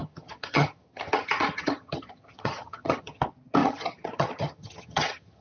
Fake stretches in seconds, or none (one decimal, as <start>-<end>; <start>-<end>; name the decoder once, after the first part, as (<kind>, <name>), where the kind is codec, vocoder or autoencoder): 0.0-3.2 (vocoder, HiFi-GAN); 3.6-5.4